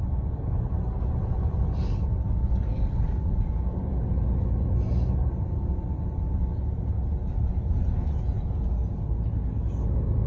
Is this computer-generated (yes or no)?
no